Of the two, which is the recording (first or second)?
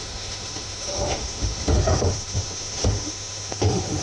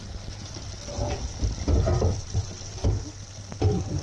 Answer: second